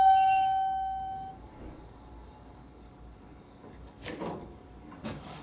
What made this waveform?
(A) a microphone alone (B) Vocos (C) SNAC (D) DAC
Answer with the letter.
D